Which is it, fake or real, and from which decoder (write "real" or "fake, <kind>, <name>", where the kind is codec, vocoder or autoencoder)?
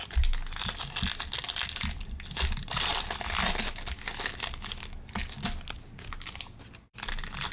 real